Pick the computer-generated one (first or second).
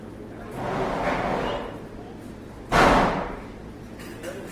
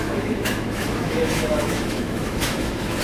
second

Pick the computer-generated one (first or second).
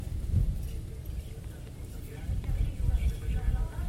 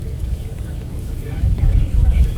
second